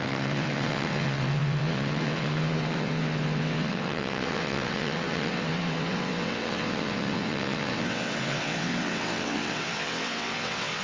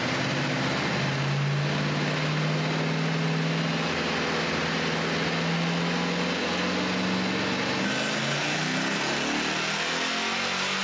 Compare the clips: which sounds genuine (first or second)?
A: second